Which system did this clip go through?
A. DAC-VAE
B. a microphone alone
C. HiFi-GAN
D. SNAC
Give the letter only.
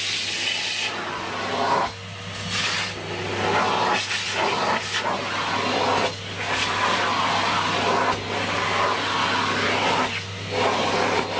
B